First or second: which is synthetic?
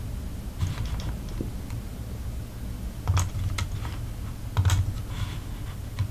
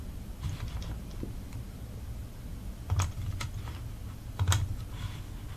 second